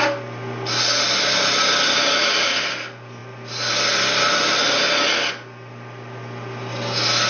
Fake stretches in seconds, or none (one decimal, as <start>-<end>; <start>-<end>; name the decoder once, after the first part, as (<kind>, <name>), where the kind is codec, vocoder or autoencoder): none